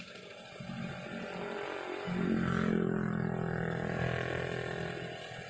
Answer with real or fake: real